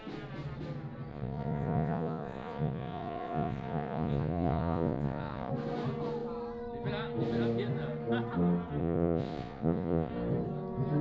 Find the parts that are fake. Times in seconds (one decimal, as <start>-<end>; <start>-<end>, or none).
1.1-5.5; 8.8-10.1